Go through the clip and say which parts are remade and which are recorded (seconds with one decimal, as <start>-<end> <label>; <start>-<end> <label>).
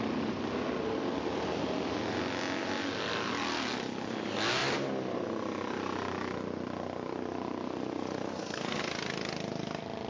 0.0-8.3 recorded; 8.3-8.8 remade; 8.8-10.1 recorded